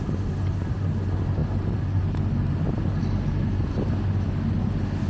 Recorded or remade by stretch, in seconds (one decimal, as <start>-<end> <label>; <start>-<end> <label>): 0.0-5.1 recorded